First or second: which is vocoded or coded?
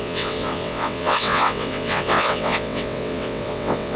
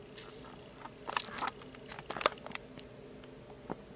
first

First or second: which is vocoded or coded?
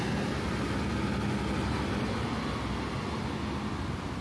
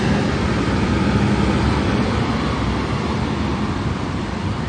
second